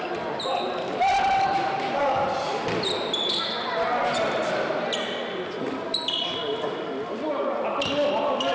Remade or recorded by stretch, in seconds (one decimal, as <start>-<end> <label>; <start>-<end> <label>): 0.0-8.5 recorded